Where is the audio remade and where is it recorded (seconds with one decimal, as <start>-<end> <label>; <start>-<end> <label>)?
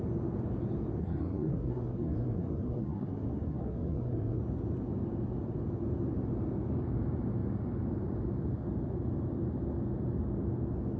0.0-1.0 recorded; 1.0-4.4 remade; 4.4-11.0 recorded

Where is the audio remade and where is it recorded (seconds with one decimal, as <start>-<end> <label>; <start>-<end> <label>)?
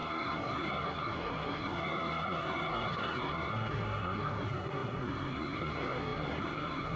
0.0-7.0 remade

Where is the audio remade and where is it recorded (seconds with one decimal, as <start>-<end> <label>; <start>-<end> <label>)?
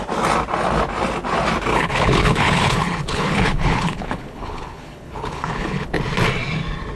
0.0-1.7 recorded; 1.7-5.9 remade; 5.9-7.0 recorded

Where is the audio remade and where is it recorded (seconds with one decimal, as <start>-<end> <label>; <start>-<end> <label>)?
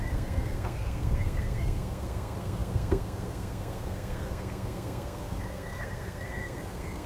0.0-7.1 remade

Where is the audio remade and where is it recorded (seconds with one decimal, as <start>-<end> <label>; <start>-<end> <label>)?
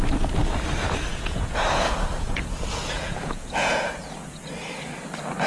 0.0-1.1 recorded; 1.1-4.4 remade; 4.4-5.5 recorded